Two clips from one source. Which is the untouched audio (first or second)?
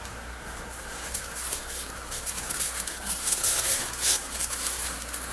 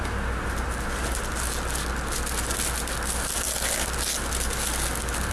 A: second